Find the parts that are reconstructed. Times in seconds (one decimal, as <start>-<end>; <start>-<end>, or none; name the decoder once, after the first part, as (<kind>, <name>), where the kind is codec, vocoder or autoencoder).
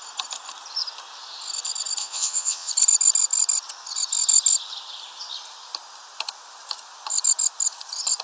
2.0-2.7 (vocoder, Vocos)